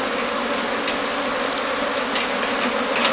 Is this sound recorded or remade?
recorded